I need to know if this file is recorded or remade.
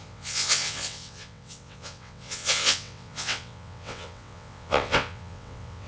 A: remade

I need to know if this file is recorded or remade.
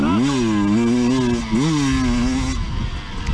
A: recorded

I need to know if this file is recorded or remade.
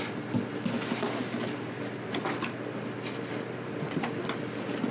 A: recorded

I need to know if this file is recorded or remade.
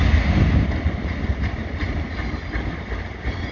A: recorded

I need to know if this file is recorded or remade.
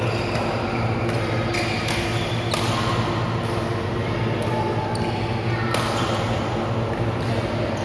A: recorded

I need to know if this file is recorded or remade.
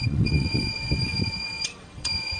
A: remade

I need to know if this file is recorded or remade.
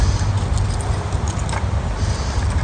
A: recorded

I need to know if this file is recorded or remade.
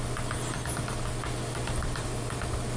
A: recorded